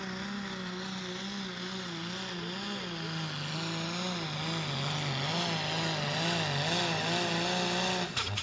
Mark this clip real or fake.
real